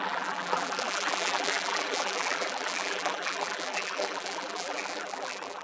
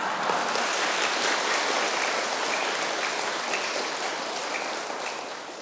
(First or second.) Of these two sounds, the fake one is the first